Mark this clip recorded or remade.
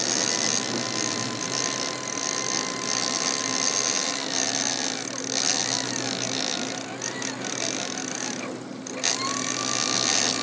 recorded